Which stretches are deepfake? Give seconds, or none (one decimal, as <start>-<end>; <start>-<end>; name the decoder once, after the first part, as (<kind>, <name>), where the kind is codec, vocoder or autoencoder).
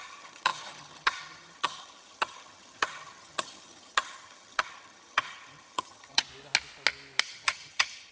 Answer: 0.0-6.3 (vocoder, HiFi-GAN); 7.2-8.1